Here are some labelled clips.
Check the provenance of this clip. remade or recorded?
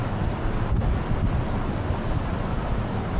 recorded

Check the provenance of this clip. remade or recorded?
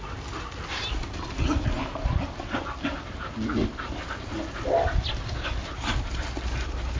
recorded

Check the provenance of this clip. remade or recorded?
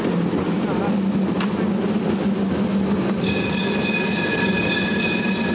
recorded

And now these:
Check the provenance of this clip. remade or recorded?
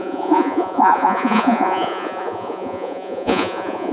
remade